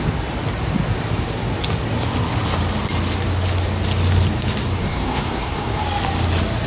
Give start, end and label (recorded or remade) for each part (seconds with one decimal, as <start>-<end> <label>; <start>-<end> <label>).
0.0-4.8 recorded; 4.8-5.8 remade; 5.8-6.7 recorded